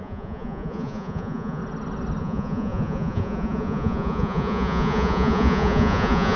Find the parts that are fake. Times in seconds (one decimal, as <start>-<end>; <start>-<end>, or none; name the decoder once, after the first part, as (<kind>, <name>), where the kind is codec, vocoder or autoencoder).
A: 0.0-1.6 (vocoder, Vocos); 2.2-6.4